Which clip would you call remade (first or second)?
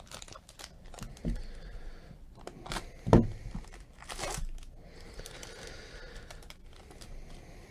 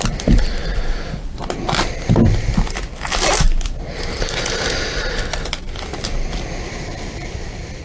second